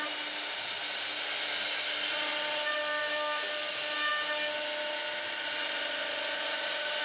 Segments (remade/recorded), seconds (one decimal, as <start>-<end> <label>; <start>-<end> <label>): 0.0-7.0 recorded